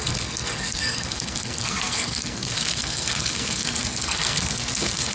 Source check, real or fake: fake